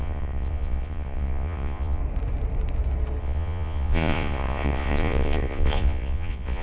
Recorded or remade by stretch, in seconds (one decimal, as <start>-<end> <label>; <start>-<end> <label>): 0.0-2.0 remade; 2.0-3.2 recorded; 3.2-6.6 remade